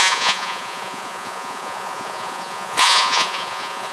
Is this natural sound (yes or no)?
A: no